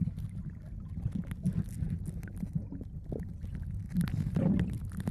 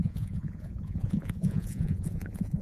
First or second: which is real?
first